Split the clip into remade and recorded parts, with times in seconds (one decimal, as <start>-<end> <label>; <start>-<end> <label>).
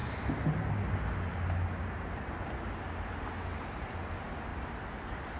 0.0-5.4 recorded